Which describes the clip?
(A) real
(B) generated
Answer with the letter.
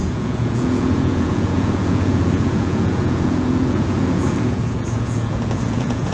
B